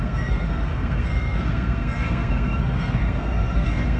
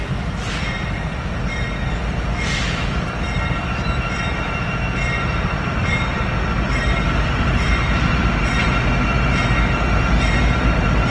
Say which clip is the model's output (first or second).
first